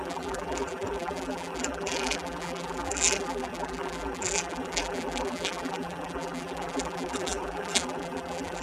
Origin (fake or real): fake